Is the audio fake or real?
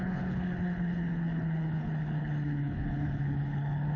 fake